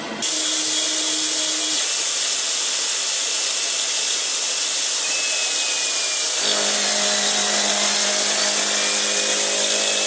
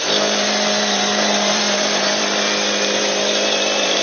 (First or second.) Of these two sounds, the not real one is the second